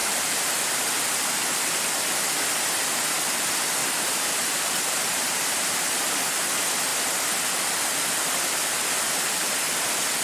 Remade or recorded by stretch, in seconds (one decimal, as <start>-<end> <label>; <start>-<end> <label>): 0.0-3.8 recorded; 3.8-6.1 remade; 6.1-10.2 recorded